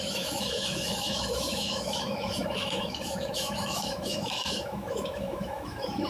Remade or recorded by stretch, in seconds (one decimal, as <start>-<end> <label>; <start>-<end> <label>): 0.0-6.1 remade

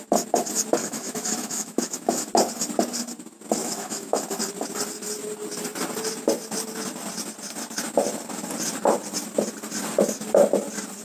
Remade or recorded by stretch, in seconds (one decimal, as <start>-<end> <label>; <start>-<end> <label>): 0.0-0.8 recorded; 0.8-2.3 remade; 2.3-3.6 recorded; 3.6-4.2 remade; 4.2-11.0 recorded

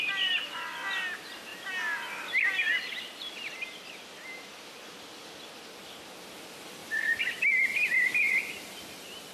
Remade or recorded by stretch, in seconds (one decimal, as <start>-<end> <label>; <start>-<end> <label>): 0.0-9.3 recorded

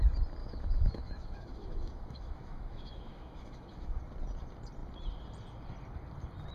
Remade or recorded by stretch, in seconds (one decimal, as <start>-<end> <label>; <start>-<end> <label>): 0.0-0.4 recorded; 0.4-4.0 remade; 4.0-6.5 recorded

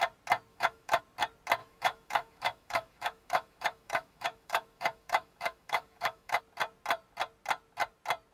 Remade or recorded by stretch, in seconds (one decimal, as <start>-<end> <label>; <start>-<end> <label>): 0.0-0.5 recorded; 0.5-1.0 remade; 1.0-1.6 recorded; 1.6-6.4 remade; 6.4-8.3 recorded

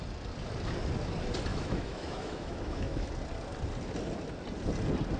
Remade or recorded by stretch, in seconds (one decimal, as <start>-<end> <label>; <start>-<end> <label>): 0.0-1.5 recorded; 1.5-3.1 remade; 3.1-5.2 recorded